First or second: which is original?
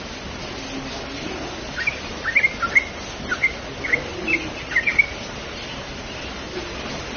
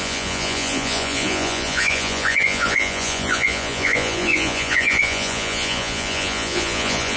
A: first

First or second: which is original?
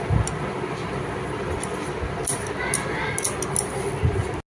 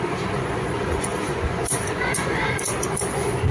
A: first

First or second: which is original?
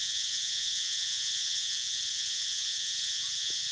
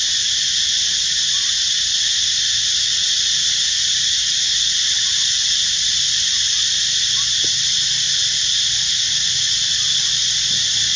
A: second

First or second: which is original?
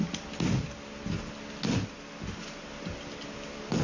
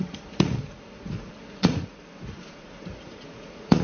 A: first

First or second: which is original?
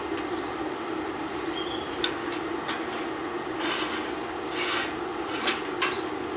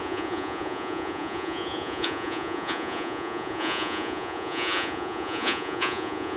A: first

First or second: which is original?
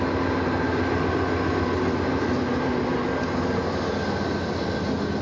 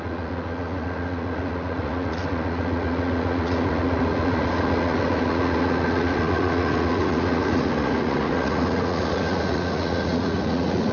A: first